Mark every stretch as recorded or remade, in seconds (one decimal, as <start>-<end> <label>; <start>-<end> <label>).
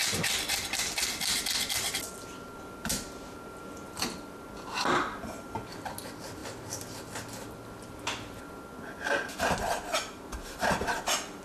0.0-11.4 recorded